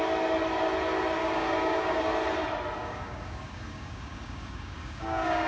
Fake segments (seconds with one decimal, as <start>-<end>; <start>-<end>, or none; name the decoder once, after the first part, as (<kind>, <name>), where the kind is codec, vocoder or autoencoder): 1.2-2.0 (codec, DAC); 2.8-5.5